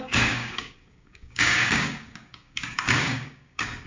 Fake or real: fake